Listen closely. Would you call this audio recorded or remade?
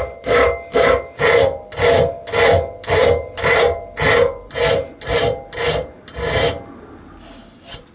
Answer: recorded